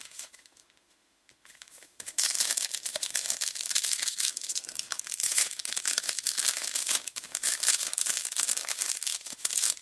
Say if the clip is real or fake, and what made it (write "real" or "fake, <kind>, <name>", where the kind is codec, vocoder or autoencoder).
fake, autoencoder, DAC-VAE